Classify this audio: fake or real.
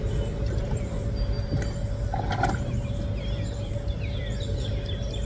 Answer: real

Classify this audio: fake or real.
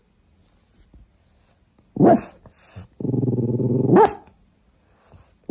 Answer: real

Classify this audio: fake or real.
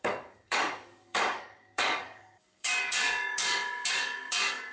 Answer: fake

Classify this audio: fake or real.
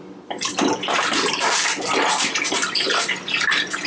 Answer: real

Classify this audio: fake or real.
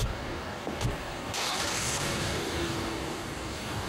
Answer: fake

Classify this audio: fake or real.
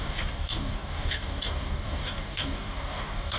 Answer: fake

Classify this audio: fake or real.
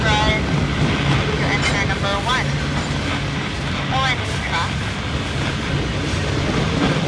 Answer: real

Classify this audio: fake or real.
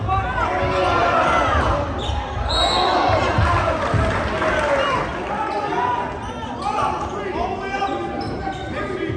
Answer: real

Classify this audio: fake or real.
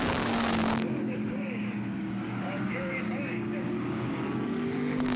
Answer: fake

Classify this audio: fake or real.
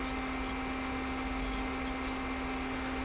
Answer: real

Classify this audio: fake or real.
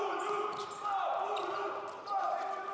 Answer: real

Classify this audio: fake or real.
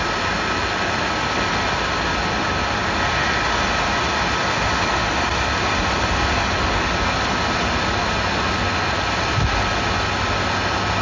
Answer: real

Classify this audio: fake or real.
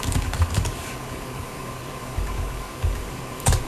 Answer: fake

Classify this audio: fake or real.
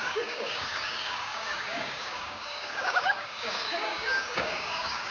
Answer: fake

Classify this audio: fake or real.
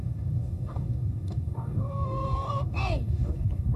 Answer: fake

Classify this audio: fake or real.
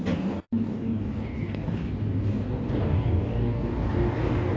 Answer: fake